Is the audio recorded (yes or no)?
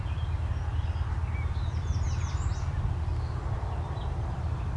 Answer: yes